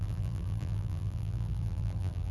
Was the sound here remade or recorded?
remade